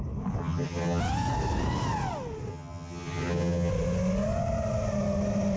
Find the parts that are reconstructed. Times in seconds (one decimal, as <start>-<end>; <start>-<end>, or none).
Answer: 0.4-1.0; 2.5-3.7